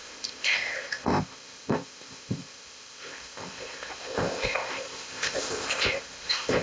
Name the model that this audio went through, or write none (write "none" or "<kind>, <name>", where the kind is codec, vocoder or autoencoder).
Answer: codec, ZipCodec